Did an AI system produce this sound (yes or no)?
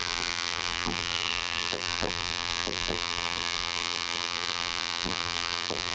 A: yes